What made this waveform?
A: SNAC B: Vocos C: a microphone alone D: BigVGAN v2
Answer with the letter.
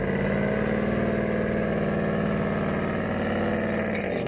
C